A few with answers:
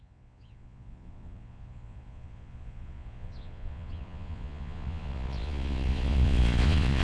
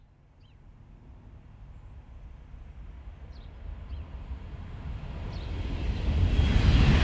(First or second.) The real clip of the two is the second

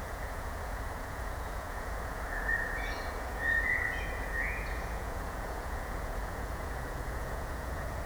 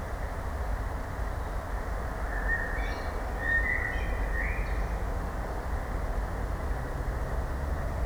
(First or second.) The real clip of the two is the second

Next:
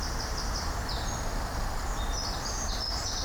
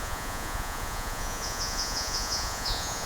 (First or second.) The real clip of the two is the first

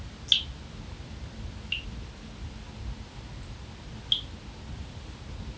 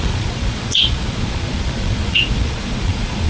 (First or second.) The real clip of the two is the first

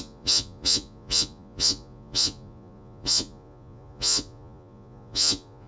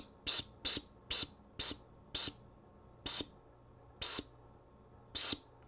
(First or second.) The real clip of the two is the second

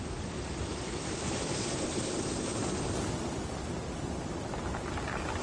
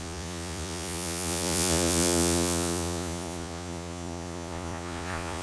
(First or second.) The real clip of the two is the first